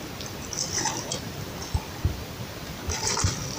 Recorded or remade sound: recorded